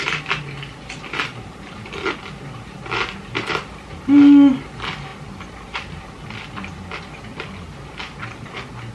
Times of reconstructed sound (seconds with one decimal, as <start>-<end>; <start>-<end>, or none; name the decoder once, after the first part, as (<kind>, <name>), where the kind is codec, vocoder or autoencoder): none